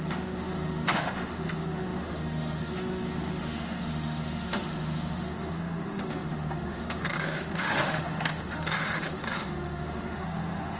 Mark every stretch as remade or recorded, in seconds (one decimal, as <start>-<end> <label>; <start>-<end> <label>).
0.0-10.8 remade